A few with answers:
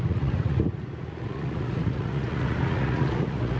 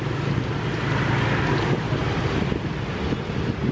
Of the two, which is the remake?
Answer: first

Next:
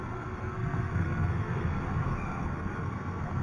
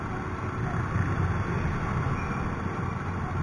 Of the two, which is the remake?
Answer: first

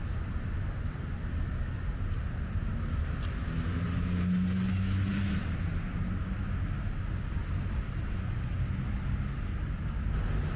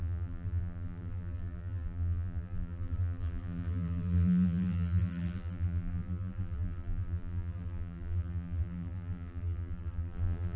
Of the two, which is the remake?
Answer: second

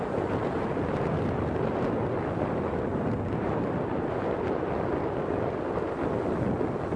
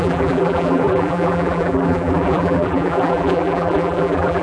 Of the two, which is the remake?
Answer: second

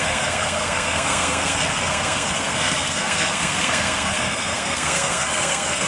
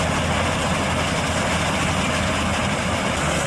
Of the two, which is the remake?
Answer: first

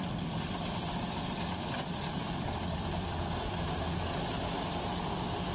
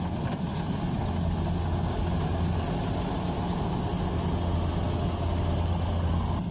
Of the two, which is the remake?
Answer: first